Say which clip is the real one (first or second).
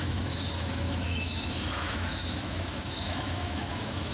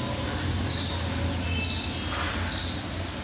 second